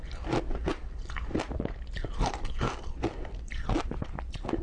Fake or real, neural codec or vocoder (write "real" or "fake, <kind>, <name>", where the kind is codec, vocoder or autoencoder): real